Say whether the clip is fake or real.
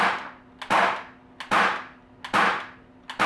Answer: real